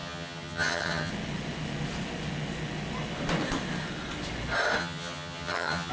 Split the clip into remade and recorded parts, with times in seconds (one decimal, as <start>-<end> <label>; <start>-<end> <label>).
0.0-1.1 remade; 1.1-4.8 recorded; 4.8-5.9 remade